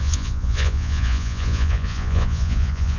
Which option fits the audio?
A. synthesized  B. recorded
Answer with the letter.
A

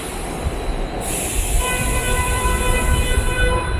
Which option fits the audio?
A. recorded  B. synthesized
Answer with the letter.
B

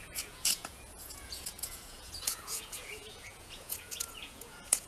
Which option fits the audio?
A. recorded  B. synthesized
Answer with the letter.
B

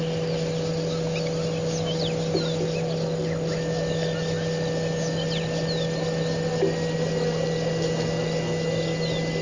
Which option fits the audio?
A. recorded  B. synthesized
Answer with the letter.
A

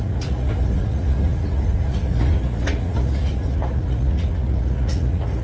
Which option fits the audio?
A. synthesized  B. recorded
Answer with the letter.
A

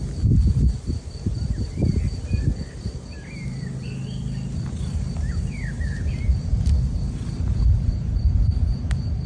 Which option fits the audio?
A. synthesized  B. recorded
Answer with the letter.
B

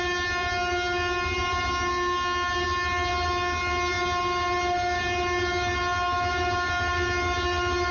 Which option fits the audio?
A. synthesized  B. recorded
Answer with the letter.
B